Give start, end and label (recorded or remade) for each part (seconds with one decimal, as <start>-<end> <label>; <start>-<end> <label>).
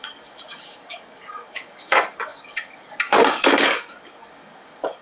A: 0.0-5.0 remade